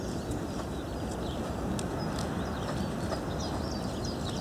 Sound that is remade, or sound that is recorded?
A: recorded